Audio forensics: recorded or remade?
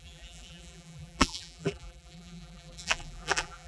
remade